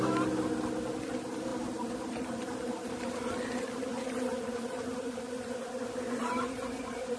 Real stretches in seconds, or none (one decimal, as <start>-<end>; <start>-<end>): 0.0-3.9; 5.2-6.2